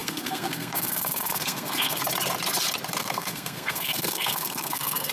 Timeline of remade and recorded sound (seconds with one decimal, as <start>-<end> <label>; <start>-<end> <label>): 0.0-2.0 remade; 2.0-3.0 recorded; 3.0-5.1 remade